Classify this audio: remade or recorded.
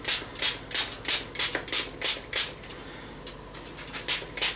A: recorded